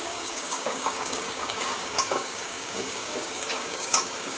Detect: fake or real fake